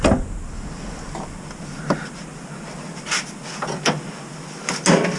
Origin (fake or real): real